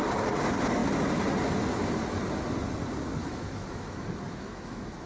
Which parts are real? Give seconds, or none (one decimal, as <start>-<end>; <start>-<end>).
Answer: 0.0-3.2